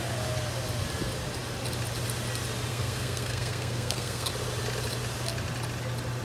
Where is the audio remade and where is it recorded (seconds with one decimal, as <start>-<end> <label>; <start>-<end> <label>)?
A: 0.0-2.7 recorded; 2.7-4.3 remade; 4.3-6.2 recorded